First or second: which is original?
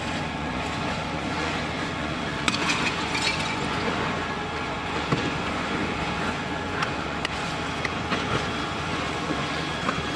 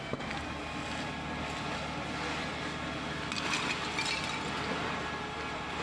second